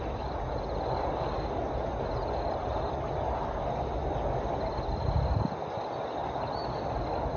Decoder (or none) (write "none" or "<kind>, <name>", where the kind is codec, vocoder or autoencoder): none